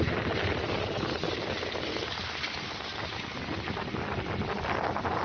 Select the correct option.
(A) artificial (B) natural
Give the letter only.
B